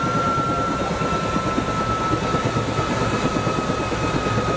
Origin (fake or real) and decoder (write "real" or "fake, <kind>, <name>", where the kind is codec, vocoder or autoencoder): real